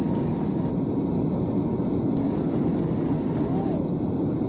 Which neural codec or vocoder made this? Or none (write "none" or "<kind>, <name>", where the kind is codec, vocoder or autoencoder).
none